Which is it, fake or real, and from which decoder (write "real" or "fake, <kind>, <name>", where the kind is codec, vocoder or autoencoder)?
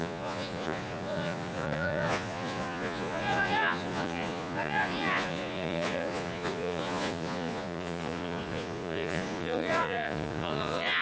fake, vocoder, Vocos